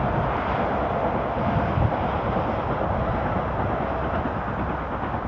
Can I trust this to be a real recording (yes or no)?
yes